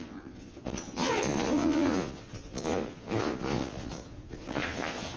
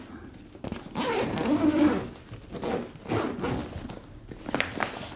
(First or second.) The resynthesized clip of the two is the first